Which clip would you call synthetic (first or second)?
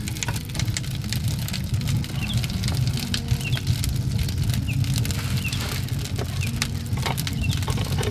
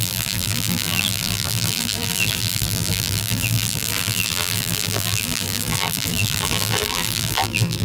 second